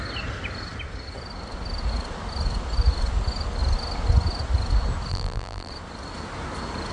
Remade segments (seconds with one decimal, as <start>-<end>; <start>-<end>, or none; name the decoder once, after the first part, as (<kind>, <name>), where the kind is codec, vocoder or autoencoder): 5.1-5.7 (vocoder, BigVGAN v2)